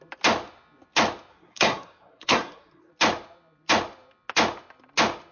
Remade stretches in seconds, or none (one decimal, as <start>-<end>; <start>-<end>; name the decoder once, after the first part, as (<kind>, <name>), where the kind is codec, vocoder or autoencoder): 1.3-2.9 (codec, SNAC)